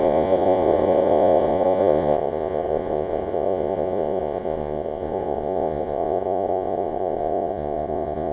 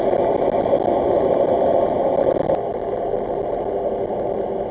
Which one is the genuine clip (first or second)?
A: second